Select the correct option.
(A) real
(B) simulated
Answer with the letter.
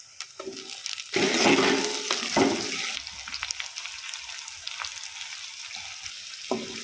A